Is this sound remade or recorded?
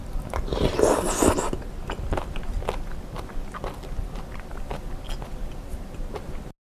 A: recorded